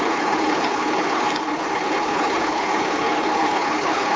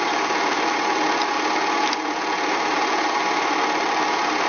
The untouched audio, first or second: second